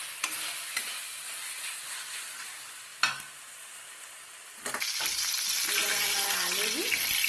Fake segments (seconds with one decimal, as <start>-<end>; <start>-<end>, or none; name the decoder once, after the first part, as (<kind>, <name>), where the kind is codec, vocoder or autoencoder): none